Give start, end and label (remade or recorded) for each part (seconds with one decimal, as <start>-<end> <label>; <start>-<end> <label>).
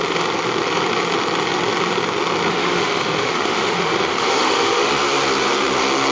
0.0-2.5 recorded; 2.5-4.9 remade; 4.9-6.1 recorded